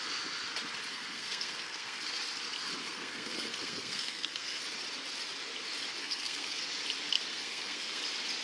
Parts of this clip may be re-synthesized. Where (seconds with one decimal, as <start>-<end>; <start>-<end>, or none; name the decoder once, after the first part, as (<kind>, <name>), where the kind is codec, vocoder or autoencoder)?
0.9-2.0 (codec, SNAC); 2.8-4.6; 6.0-6.6; 7.3-8.0